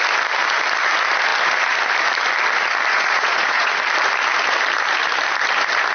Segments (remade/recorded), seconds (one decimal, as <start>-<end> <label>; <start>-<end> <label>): 0.0-2.9 recorded; 2.9-3.7 remade; 3.7-5.9 recorded